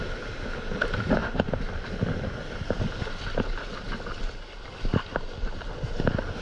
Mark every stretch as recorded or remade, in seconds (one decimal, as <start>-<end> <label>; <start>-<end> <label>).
0.0-6.4 recorded